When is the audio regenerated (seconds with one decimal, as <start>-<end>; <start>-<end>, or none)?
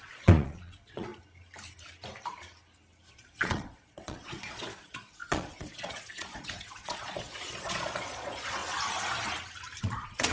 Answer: 0.0-1.1; 3.1-8.6; 9.8-10.3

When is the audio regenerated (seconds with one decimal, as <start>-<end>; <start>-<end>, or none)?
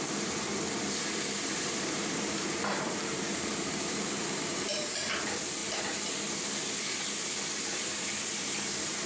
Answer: 2.0-4.9